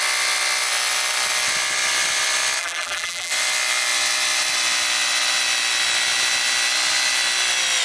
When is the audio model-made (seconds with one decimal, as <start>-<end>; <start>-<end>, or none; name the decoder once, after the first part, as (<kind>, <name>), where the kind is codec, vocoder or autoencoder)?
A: 2.6-3.3 (vocoder, BigVGAN v2)